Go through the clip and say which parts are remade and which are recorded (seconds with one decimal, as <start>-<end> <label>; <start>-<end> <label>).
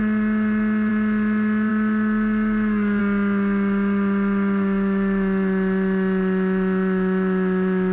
0.0-7.9 recorded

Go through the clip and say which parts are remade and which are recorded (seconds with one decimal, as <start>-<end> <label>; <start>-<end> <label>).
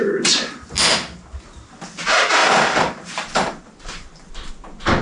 0.0-2.4 recorded; 2.4-4.3 remade; 4.3-5.0 recorded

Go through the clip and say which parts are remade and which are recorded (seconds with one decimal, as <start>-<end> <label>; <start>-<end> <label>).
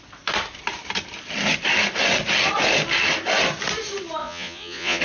0.0-4.2 recorded; 4.2-5.0 remade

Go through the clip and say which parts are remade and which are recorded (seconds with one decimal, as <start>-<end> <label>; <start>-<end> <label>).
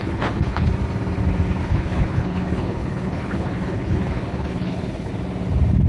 0.0-0.7 remade; 0.7-1.6 recorded; 1.6-5.1 remade; 5.1-5.9 recorded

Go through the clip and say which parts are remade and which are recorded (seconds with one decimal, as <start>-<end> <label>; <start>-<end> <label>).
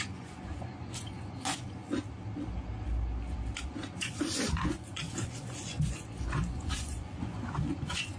0.0-1.8 remade; 1.8-3.6 recorded; 3.6-8.2 remade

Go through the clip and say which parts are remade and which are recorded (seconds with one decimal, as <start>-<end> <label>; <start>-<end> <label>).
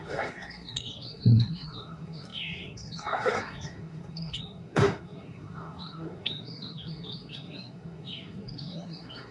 0.0-9.3 remade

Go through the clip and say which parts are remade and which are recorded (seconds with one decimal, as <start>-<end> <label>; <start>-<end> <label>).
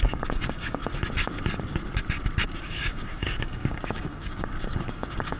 0.0-0.8 remade; 0.8-2.6 recorded; 2.6-5.4 remade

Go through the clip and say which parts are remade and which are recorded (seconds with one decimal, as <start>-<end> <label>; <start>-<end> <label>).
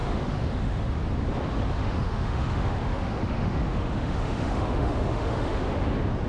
0.0-0.9 remade; 0.9-1.8 recorded; 1.8-5.6 remade; 5.6-6.3 recorded